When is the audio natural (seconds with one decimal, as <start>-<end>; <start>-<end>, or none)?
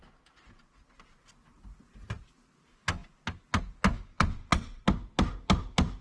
0.0-4.1; 4.8-6.0